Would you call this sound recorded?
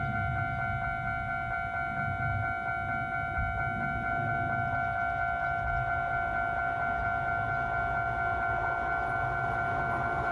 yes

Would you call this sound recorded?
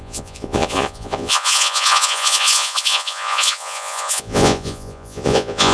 no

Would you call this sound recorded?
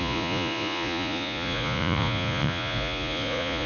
no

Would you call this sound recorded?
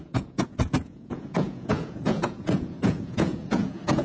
no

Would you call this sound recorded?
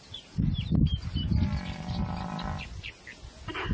yes